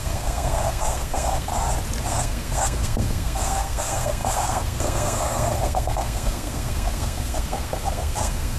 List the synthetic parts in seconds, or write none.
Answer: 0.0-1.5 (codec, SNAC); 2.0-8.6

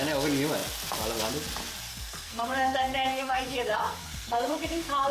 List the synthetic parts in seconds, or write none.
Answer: 1.9-5.1 (codec, SNAC)